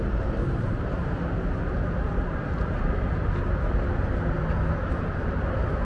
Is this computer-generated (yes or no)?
no